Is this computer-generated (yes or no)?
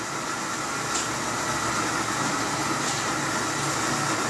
no